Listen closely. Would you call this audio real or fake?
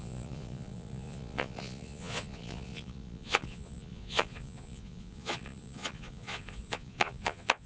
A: fake